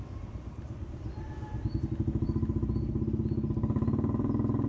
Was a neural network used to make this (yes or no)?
no